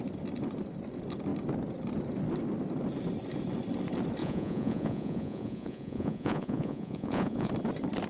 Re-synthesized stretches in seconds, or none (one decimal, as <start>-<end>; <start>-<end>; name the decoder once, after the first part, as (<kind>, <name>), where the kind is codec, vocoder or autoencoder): 4.2-7.5 (vocoder, Vocos)